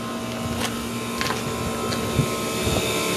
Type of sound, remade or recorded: recorded